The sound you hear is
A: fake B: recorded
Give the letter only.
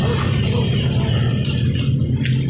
B